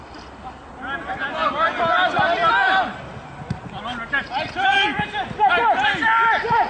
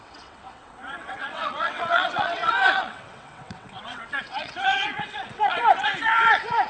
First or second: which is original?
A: first